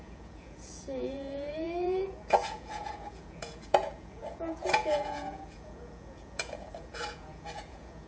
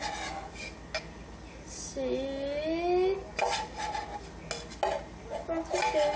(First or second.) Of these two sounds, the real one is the second